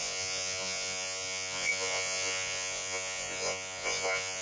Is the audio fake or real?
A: fake